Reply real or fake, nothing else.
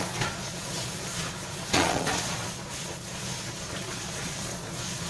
fake